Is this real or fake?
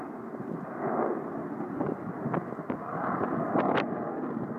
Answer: real